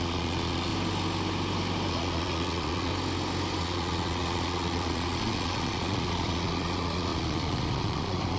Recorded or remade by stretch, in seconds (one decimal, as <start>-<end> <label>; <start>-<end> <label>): 0.0-0.7 remade; 0.7-1.9 recorded; 1.9-2.9 remade; 2.9-3.6 recorded; 3.6-8.4 remade